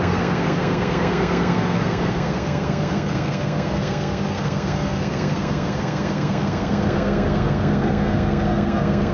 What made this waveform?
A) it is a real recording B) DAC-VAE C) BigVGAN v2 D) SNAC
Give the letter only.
D